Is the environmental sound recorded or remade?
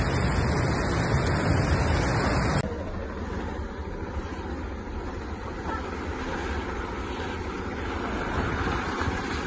recorded